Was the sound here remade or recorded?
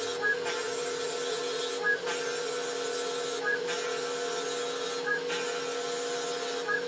recorded